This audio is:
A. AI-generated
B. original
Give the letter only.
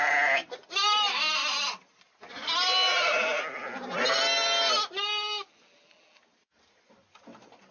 B